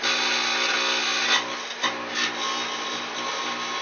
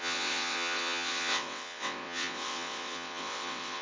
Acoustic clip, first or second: first